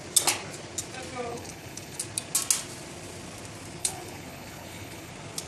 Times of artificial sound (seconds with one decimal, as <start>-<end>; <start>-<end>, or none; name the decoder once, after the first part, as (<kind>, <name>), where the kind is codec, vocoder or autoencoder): 1.3-2.0 (codec, HILCodec); 3.8-5.1